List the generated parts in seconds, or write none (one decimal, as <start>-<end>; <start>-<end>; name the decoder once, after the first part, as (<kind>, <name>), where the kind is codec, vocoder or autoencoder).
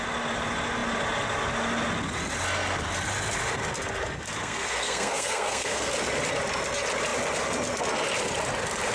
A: 4.4-5.9 (codec, SNAC)